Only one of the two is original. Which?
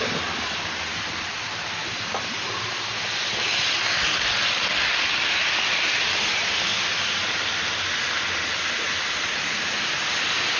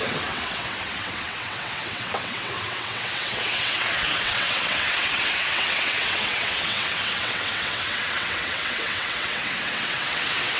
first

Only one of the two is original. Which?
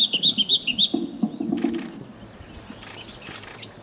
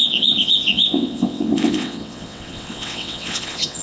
first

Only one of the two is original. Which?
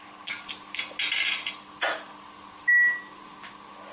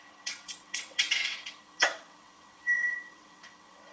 first